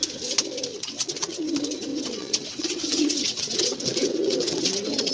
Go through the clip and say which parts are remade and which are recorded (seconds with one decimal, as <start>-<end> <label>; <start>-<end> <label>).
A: 0.0-0.7 recorded; 0.7-1.5 remade; 1.5-1.9 recorded; 1.9-5.1 remade